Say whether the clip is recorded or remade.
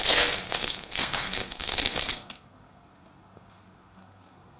remade